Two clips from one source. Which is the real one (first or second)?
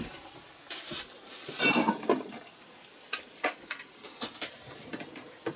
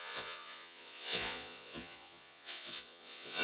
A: first